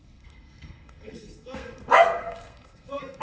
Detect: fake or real fake